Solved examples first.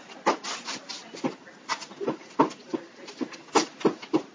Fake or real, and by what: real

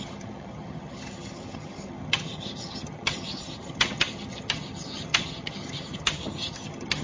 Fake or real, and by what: fake, vocoder, HiFi-GAN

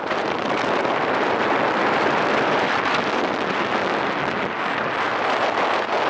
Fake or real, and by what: real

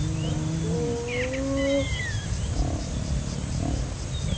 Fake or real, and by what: real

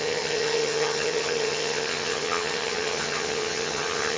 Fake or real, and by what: fake, vocoder, HiFi-GAN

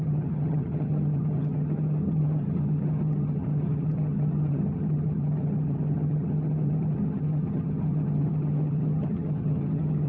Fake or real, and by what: fake, vocoder, HiFi-GAN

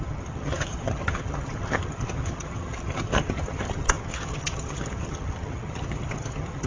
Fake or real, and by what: fake, vocoder, HiFi-GAN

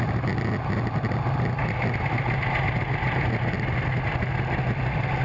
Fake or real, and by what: real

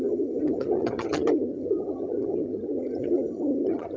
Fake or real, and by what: fake, vocoder, HiFi-GAN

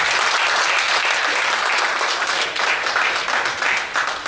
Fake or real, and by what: real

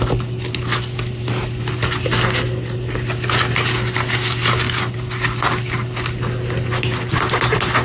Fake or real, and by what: real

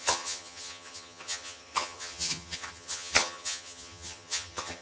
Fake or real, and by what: fake, vocoder, HiFi-GAN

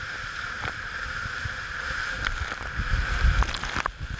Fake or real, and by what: real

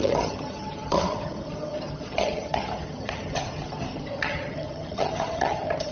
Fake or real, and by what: fake, vocoder, HiFi-GAN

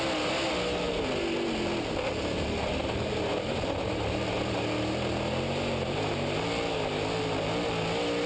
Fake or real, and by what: real